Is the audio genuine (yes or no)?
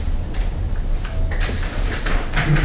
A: no